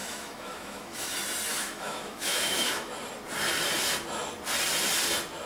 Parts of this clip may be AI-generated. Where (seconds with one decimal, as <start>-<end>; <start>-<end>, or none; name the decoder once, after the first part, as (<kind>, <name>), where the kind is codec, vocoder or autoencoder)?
0.0-1.1 (autoencoder, DAC-VAE); 1.5-2.9